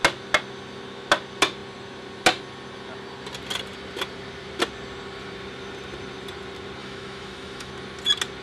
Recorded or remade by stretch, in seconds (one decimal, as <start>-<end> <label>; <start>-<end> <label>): 0.0-6.8 recorded; 6.8-7.7 remade; 7.7-8.4 recorded